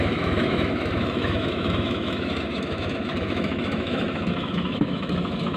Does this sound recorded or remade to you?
remade